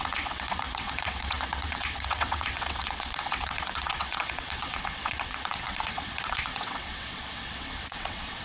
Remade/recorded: remade